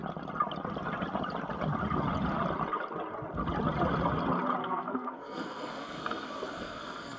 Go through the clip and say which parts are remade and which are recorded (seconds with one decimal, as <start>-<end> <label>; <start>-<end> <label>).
0.0-4.6 recorded; 4.6-7.2 remade